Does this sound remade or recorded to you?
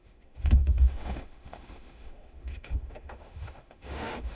remade